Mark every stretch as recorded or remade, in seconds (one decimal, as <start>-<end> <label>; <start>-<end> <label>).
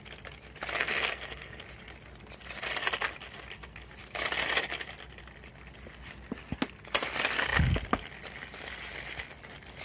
0.0-0.8 recorded; 0.8-1.6 remade; 1.6-9.8 recorded